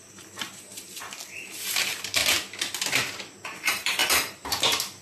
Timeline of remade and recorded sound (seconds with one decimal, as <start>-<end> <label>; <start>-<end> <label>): 0.0-2.2 remade; 2.2-3.3 recorded; 3.3-5.0 remade